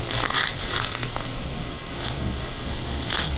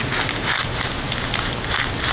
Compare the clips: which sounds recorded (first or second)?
second